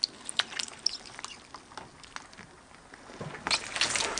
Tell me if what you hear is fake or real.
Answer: real